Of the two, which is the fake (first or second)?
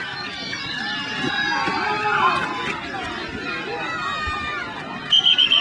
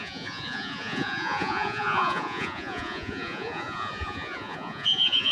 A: second